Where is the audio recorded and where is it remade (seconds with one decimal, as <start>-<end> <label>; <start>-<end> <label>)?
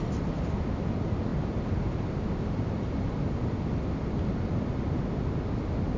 0.0-6.0 recorded